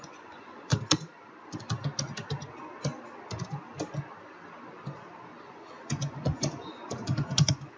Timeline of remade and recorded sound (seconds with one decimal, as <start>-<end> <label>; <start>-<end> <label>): 0.0-0.7 remade; 0.7-5.4 recorded; 5.4-7.8 remade